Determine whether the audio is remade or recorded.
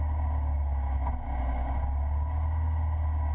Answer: recorded